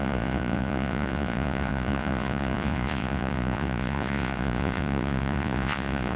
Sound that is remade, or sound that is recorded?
remade